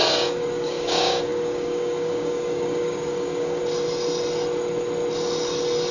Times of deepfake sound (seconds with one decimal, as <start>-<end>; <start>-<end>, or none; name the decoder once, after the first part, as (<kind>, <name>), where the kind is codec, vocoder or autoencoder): 0.0-3.6 (codec, DAC)